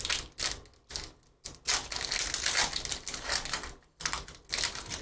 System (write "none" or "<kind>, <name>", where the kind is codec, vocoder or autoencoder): none